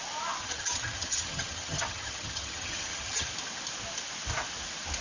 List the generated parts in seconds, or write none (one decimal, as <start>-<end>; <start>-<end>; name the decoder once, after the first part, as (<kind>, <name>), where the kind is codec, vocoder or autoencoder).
0.4-3.3 (vocoder, HiFi-GAN)